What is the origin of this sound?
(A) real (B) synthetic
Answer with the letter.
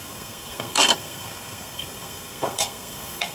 B